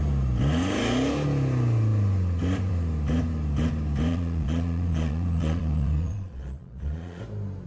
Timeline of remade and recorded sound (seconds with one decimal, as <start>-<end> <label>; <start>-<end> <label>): 0.0-4.1 recorded; 4.1-7.2 remade; 7.2-7.7 recorded